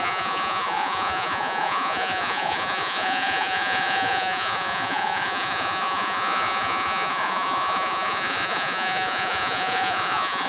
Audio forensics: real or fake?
fake